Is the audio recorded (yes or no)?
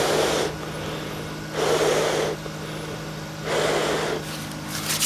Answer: yes